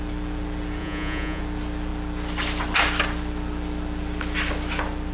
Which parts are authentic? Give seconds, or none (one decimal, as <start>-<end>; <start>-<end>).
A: 0.0-0.8; 1.4-5.1